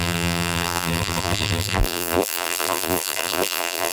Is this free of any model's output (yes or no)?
no